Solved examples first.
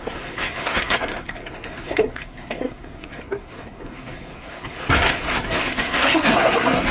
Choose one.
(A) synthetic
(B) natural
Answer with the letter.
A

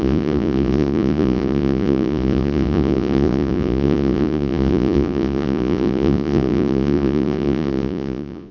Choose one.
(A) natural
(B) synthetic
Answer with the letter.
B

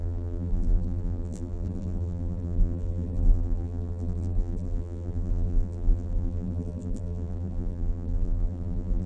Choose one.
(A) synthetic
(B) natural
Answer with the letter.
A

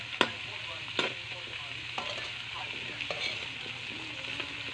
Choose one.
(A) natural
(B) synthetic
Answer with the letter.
A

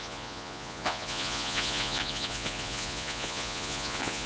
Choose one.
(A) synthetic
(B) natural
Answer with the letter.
A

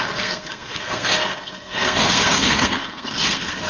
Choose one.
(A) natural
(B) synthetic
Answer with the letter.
B